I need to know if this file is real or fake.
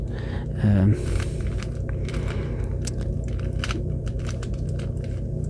real